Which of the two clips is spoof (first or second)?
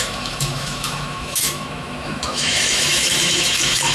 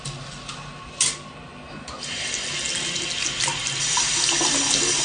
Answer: first